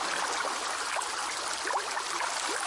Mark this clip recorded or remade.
recorded